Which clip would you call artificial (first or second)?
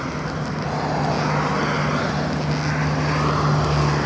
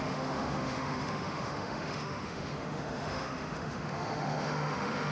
second